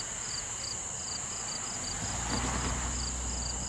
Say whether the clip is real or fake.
real